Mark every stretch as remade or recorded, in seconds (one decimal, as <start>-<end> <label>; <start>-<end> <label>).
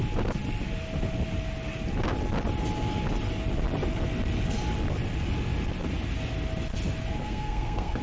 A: 0.0-7.2 recorded; 7.2-8.0 remade